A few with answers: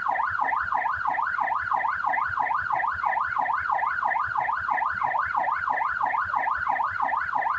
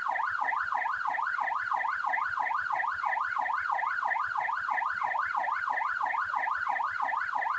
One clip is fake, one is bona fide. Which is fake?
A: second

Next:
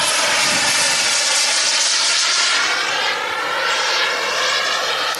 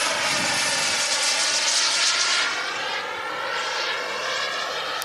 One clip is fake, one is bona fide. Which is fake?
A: first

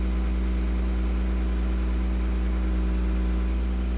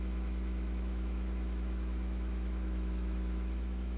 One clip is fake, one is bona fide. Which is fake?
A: second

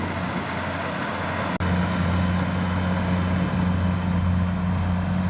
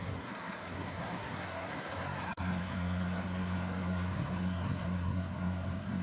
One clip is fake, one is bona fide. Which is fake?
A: second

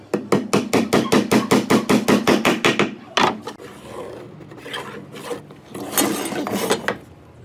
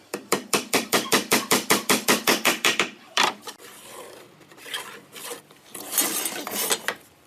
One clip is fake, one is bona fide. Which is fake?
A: second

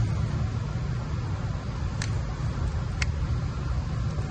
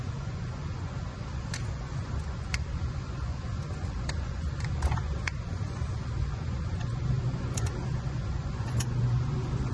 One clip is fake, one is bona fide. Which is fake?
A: second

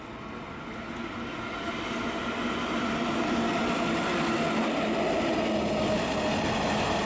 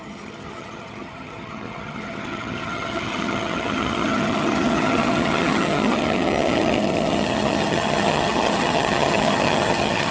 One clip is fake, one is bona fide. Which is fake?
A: second